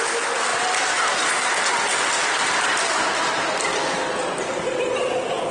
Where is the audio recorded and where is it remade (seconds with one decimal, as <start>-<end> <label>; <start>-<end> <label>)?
0.0-2.2 recorded; 2.2-4.1 remade; 4.1-5.5 recorded